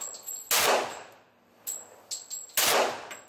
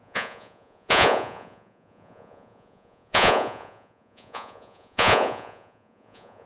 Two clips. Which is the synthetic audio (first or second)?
second